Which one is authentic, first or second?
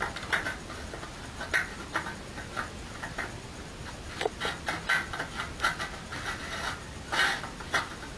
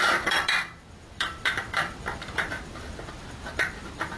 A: first